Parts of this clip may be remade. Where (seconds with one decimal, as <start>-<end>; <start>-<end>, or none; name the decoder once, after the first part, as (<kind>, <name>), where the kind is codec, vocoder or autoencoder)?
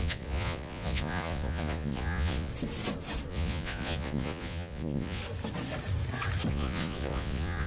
0.0-2.5 (vocoder, Vocos); 3.3-5.2; 6.5-7.7